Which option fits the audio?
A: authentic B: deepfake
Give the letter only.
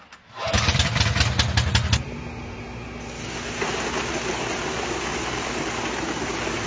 A